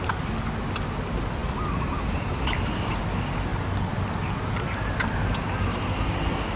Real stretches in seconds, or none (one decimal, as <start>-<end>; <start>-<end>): 0.0-1.4; 3.0-6.6